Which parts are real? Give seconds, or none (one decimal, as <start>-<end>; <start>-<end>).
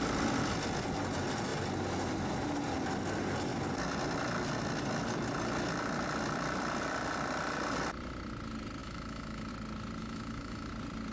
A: 0.0-8.8; 9.5-10.0; 10.7-11.1